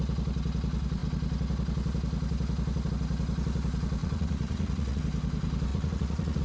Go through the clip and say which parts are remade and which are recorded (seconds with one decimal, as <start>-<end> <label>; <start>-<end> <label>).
0.0-4.0 recorded; 4.0-5.0 remade; 5.0-5.7 recorded; 5.7-6.4 remade